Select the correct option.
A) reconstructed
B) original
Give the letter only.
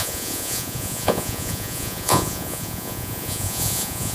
A